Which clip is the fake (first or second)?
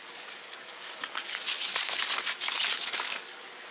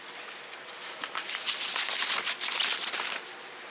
first